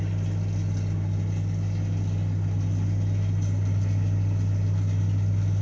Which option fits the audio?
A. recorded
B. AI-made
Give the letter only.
A